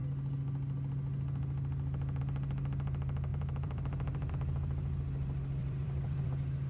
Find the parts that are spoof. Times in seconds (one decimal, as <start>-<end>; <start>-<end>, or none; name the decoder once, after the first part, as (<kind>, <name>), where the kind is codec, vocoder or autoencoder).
3.3-4.3 (vocoder, BigVGAN v2); 5.6-6.3